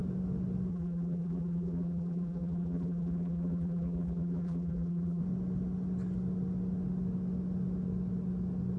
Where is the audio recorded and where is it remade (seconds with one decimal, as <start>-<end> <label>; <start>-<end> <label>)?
0.0-0.7 recorded; 0.7-5.2 remade; 5.2-8.8 recorded